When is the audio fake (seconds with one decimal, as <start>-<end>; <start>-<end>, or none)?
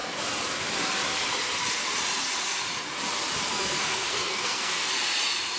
3.5-4.9